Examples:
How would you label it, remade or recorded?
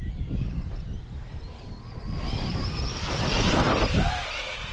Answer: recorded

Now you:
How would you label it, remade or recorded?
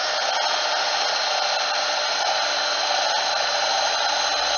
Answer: recorded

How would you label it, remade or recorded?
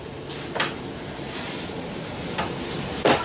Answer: recorded